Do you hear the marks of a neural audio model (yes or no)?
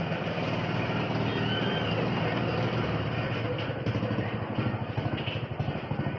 no